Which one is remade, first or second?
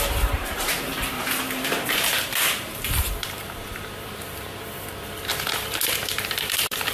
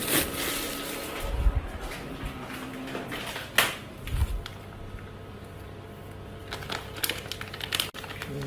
first